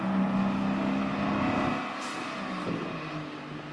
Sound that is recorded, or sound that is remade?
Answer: recorded